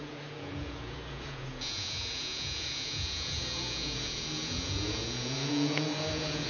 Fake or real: fake